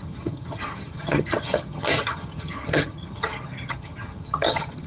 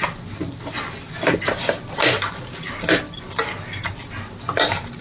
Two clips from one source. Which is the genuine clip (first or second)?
second